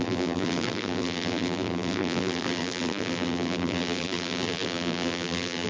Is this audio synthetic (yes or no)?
yes